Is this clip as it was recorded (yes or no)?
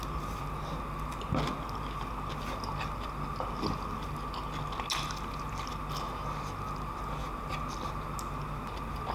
yes